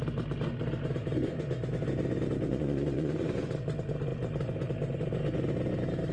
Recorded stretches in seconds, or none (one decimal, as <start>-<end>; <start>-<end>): 0.0-2.5; 3.5-6.1